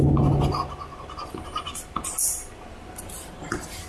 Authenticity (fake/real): real